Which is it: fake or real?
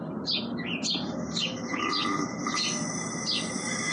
real